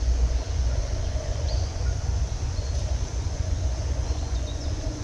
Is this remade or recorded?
remade